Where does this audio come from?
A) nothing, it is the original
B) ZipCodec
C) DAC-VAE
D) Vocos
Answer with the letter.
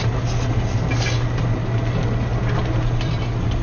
A